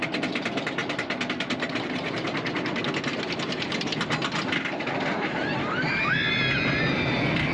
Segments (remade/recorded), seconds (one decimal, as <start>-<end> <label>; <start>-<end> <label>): 0.0-7.5 recorded